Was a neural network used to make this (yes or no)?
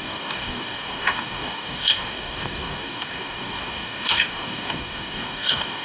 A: yes